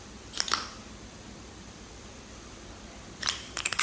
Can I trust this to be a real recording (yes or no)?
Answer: yes